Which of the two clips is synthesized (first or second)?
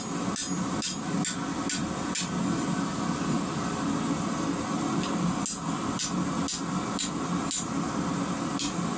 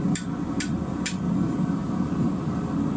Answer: second